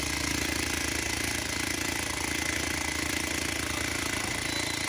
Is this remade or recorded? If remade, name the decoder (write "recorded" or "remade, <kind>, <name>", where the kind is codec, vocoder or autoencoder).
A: recorded